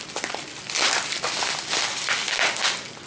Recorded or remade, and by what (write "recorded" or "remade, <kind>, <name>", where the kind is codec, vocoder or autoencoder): recorded